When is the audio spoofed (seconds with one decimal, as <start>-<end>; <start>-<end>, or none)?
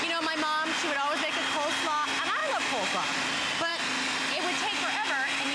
none